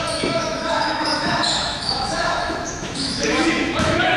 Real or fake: fake